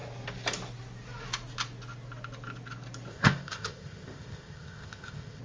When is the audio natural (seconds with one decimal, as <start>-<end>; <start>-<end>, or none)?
0.0-3.1